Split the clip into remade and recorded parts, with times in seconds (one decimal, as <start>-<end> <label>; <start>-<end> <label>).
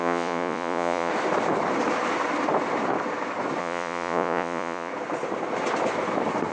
0.0-1.1 remade; 1.1-3.6 recorded; 3.6-4.9 remade; 4.9-6.5 recorded